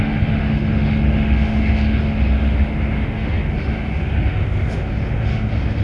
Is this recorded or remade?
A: remade